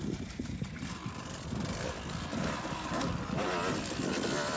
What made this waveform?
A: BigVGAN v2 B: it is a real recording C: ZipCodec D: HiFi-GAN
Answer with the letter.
B